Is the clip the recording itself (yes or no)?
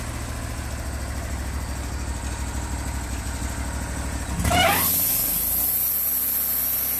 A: yes